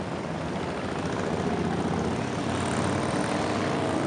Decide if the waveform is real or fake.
real